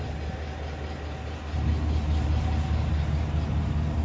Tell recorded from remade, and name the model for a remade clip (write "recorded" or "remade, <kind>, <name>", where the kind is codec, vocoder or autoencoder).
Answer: recorded